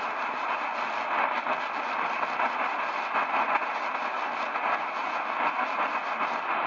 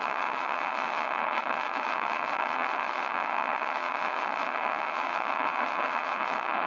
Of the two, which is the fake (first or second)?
second